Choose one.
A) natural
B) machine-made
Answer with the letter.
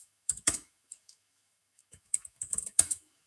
B